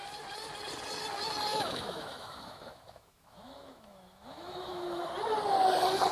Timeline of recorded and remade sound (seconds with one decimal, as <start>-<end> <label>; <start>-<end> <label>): 0.0-1.5 recorded; 1.5-5.1 remade; 5.1-6.1 recorded

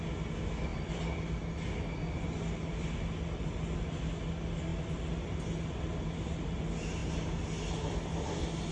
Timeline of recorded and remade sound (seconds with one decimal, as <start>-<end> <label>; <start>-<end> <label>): 0.0-8.7 recorded

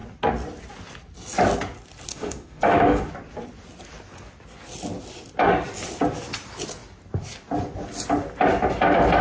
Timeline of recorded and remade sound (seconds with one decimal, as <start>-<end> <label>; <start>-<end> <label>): 0.0-2.1 recorded; 2.1-3.1 remade; 3.1-9.2 recorded

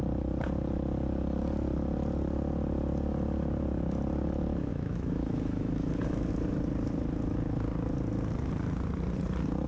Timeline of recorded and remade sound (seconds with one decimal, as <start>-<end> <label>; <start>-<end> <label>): 0.0-4.7 recorded; 4.7-6.3 remade; 6.3-9.7 recorded

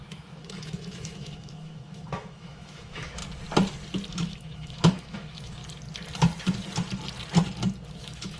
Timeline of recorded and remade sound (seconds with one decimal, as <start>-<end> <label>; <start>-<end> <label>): 0.0-3.2 remade; 3.2-4.1 recorded; 4.1-5.6 remade; 5.6-7.9 recorded; 7.9-8.4 remade